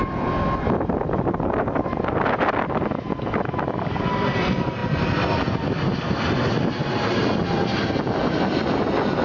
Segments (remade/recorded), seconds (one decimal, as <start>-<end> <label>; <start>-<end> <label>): 0.0-9.2 recorded